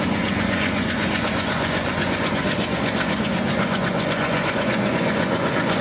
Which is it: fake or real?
fake